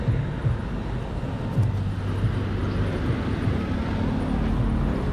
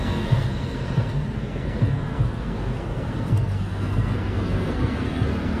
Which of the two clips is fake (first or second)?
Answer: second